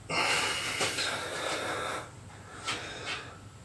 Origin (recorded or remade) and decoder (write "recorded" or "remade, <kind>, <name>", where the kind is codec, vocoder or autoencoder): recorded